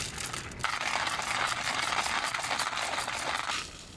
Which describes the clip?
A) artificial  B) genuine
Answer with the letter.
B